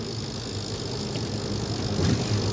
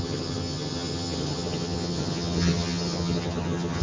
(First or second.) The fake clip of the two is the second